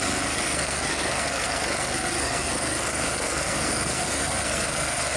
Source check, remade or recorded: remade